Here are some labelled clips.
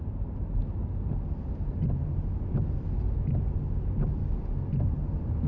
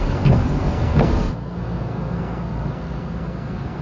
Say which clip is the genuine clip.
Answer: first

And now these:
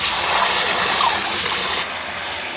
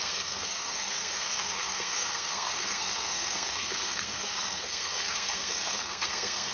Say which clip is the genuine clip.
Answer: first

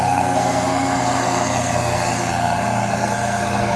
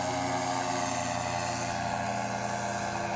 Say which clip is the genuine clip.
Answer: second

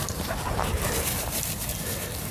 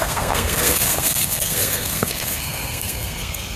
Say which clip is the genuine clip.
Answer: first